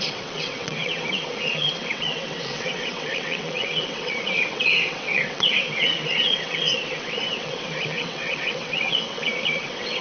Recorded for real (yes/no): no